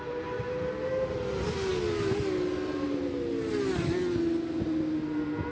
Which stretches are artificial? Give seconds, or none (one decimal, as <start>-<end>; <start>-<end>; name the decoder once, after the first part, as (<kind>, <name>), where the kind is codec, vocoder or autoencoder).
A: none